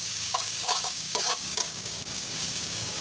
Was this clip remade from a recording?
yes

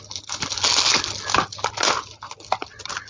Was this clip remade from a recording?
no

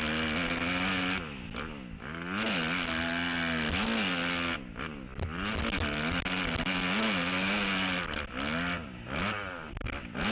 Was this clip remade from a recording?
no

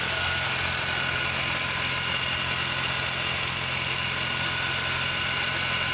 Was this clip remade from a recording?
no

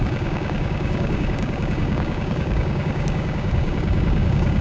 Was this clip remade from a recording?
yes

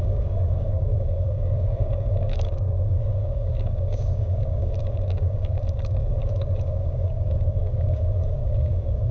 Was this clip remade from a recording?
yes